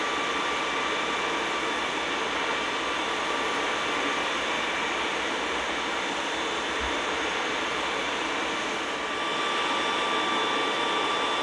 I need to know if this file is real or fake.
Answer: real